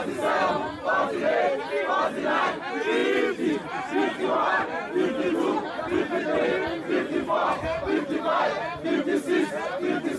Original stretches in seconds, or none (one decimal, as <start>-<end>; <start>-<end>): 0.0-7.3; 8.2-10.2